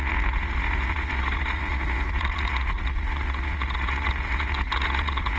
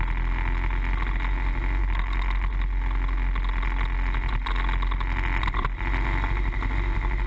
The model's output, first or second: first